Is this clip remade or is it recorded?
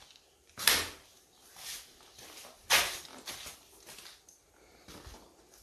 recorded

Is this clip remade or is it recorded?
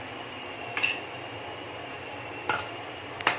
recorded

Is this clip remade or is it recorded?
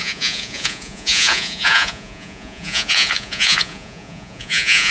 remade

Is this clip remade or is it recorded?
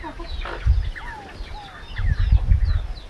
recorded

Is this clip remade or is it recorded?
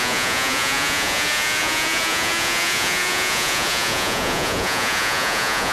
remade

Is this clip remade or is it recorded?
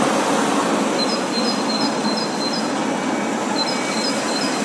recorded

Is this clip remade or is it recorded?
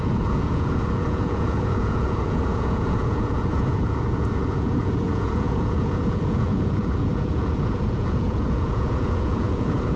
remade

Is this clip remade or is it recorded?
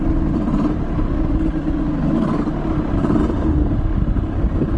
recorded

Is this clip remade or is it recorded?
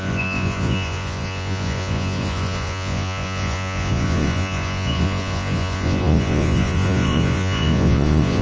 remade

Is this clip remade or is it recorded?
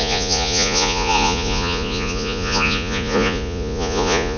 remade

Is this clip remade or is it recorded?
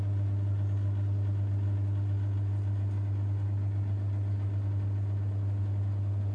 recorded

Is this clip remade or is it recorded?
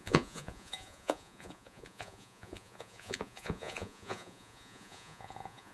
remade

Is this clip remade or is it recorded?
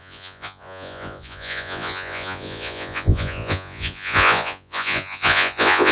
remade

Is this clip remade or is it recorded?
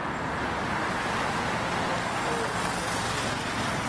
recorded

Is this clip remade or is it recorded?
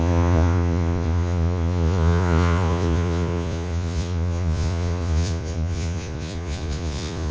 remade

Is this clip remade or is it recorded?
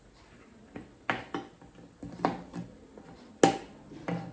recorded